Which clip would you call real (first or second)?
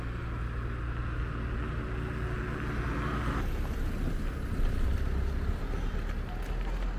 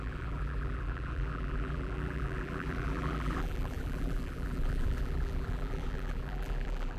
first